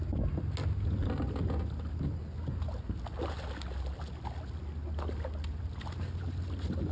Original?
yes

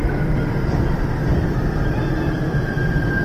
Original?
no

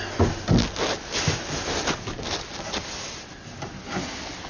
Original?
yes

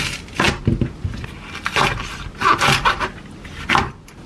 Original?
yes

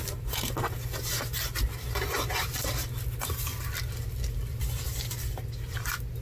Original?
yes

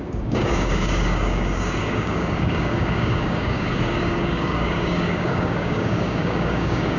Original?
no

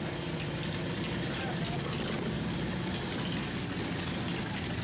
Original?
yes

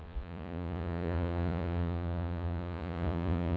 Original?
no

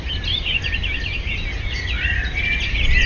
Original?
yes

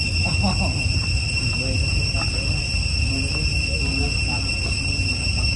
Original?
yes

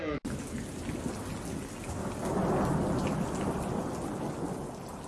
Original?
yes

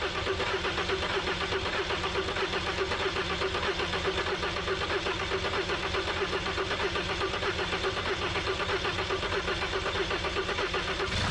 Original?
yes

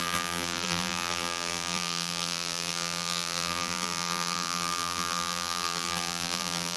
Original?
no